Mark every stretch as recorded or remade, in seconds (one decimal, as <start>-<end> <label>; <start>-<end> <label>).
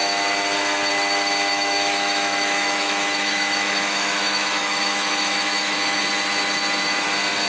0.0-1.5 recorded; 1.5-6.0 remade; 6.0-7.5 recorded